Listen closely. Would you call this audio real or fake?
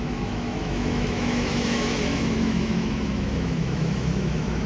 fake